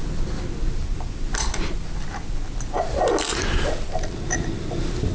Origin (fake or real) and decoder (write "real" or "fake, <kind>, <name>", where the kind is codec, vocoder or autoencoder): real